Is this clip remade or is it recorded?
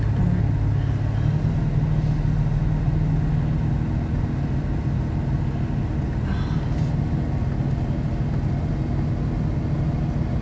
recorded